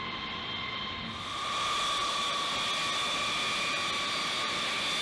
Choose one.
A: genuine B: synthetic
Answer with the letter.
A